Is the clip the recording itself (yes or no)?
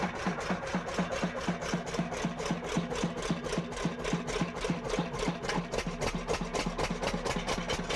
yes